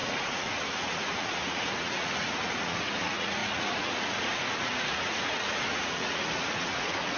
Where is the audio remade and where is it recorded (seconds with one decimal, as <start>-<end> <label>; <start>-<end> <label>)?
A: 0.0-7.2 remade